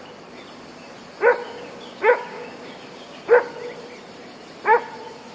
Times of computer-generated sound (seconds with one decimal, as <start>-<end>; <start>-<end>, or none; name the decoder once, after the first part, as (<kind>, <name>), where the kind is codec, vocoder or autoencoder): 1.4-3.3 (codec, DAC)